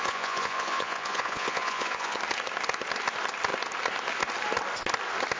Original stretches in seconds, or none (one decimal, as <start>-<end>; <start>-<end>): 2.2-5.4